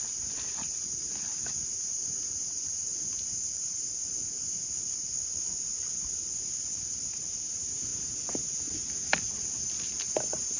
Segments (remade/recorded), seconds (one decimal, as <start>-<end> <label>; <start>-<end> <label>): 0.0-10.6 recorded